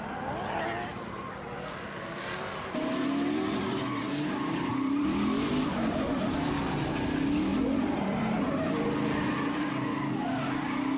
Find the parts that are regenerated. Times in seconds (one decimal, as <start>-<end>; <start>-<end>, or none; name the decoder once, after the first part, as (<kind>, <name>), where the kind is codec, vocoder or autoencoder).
0.9-3.8 (vocoder, BigVGAN v2); 4.7-6.2; 7.5-8.4